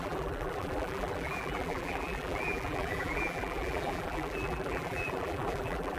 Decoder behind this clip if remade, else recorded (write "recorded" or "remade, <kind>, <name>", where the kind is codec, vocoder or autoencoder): remade, vocoder, BigVGAN v2